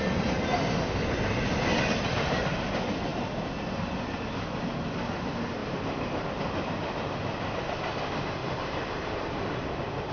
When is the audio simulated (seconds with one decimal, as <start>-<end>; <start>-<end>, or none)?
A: 5.6-6.4; 8.4-10.1